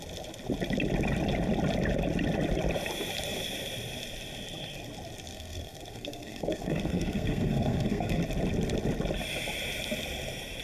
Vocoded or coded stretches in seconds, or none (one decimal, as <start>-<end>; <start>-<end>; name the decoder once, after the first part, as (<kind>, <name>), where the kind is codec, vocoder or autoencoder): 5.3-8.2 (codec, SNAC)